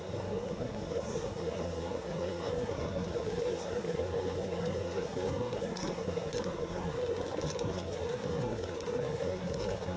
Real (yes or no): no